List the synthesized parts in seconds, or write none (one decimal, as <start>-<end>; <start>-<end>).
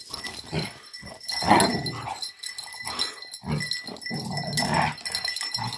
none